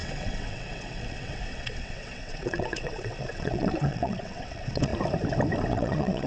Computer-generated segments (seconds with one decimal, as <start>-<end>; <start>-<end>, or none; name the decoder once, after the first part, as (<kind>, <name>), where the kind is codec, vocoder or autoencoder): 0.0-4.9 (vocoder, WaveNeXt); 5.7-6.3